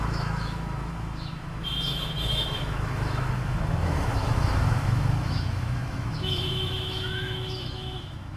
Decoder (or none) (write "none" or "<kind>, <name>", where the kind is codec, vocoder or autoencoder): autoencoder, DAC-VAE